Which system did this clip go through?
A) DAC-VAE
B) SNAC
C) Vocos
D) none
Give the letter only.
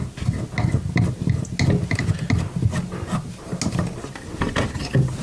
D